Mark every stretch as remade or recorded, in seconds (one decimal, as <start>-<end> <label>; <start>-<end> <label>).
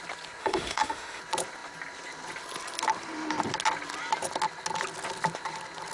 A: 0.0-0.4 recorded; 0.4-1.2 remade; 1.2-5.9 recorded